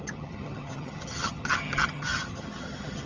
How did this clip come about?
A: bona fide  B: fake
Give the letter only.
B